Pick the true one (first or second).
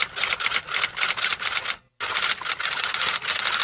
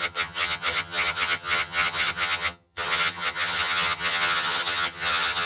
first